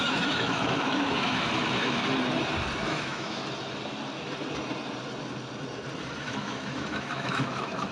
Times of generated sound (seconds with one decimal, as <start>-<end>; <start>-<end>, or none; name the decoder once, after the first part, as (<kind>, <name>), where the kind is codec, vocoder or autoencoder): 0.0-2.0 (autoencoder, DAC-VAE); 2.9-3.4; 6.2-7.9